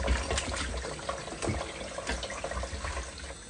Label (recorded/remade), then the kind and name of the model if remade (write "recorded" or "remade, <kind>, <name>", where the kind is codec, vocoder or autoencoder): recorded